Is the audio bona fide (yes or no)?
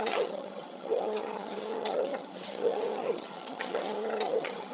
no